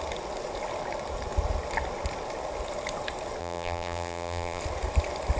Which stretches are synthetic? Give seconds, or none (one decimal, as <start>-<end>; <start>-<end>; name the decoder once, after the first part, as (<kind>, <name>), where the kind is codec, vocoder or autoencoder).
3.4-4.6 (vocoder, BigVGAN v2)